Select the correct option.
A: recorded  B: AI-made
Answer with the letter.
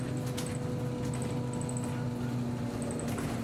A